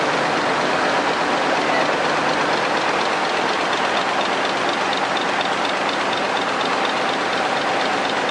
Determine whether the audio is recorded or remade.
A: recorded